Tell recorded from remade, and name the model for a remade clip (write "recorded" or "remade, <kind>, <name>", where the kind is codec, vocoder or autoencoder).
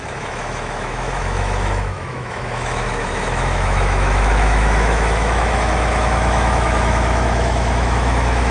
remade, autoencoder, DAC-VAE